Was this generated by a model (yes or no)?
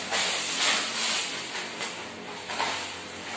no